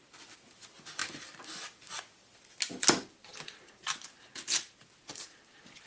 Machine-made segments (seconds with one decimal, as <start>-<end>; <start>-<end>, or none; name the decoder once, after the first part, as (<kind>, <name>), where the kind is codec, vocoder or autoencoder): none

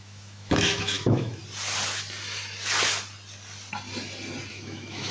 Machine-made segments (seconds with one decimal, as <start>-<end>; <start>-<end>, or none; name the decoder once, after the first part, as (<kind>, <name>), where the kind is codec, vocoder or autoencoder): 0.0-1.4 (autoencoder, DAC-VAE); 4.5-5.1

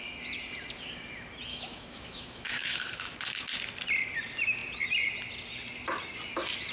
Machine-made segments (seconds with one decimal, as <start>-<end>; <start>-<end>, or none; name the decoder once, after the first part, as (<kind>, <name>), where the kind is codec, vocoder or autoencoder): 1.5-2.8 (autoencoder, DAC-VAE)

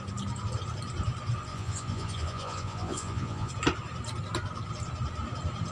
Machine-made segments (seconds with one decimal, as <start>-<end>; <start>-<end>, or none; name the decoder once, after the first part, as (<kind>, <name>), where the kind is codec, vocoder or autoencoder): 1.5-3.5 (vocoder, Vocos)

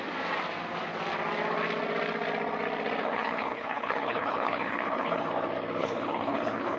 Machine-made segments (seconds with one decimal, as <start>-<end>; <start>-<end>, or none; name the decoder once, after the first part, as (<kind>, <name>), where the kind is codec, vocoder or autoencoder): 3.0-5.3 (codec, HILCodec); 5.8-6.8